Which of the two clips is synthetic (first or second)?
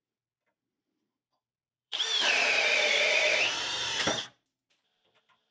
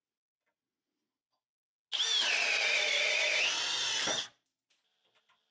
first